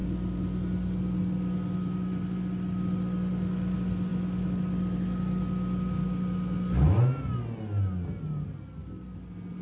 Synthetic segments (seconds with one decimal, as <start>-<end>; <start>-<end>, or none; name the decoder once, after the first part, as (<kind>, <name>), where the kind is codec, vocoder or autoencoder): none